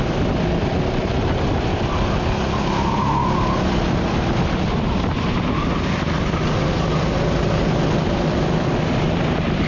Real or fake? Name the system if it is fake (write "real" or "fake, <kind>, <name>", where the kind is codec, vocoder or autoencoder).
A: real